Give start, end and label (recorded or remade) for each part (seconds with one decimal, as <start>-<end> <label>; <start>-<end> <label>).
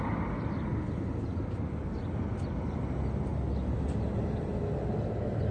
0.0-5.5 recorded